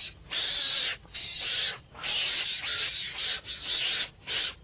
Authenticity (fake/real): real